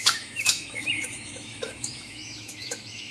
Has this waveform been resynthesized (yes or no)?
yes